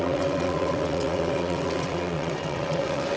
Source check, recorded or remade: remade